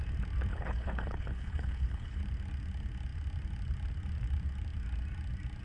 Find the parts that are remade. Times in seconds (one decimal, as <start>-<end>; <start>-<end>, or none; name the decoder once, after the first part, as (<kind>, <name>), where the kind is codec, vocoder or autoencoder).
0.5-2.2 (codec, HILCodec)